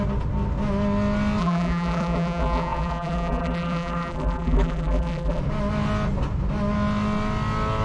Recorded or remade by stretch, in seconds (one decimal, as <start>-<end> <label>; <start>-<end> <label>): 0.0-1.4 recorded; 1.4-5.4 remade; 5.4-7.8 recorded